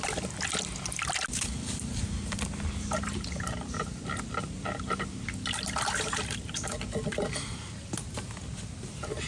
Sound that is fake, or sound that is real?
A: real